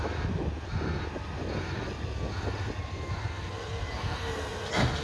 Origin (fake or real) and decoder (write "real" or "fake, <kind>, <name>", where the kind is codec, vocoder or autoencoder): real